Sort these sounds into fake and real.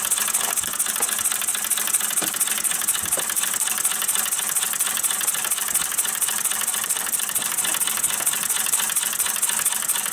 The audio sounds real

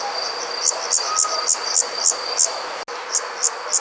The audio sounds real